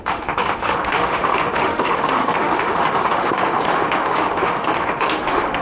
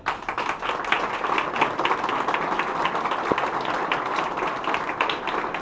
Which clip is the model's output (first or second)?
first